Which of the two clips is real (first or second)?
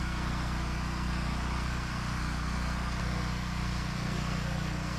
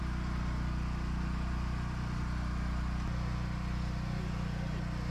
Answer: second